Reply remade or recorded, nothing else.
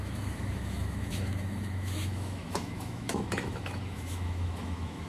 remade